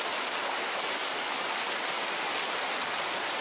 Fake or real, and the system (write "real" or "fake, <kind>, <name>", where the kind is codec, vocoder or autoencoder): real